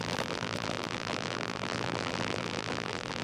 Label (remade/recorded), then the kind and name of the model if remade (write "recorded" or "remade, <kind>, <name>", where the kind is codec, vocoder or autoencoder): remade, vocoder, BigVGAN v2